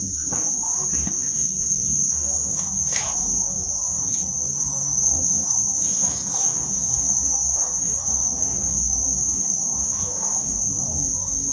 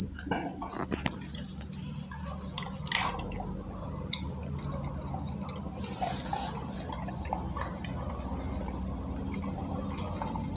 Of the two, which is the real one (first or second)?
second